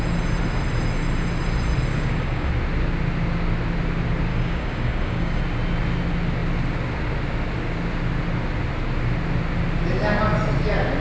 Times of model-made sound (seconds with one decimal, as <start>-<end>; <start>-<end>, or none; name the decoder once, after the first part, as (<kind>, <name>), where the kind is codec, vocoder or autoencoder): 1.9-2.5 (codec, DAC); 4.3-5.4